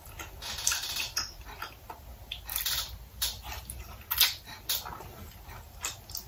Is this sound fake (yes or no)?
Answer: no